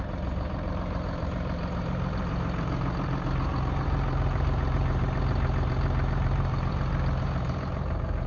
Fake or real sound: fake